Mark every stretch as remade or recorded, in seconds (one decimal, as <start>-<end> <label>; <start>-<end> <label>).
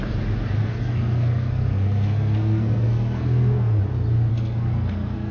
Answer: 0.0-0.6 recorded; 0.6-3.8 remade; 3.8-4.3 recorded; 4.3-5.3 remade